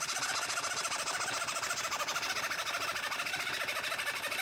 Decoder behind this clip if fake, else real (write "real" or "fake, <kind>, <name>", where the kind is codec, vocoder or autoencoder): real